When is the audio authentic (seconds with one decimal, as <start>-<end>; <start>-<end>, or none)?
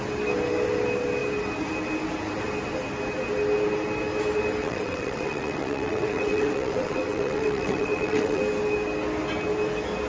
0.0-4.6; 8.4-10.1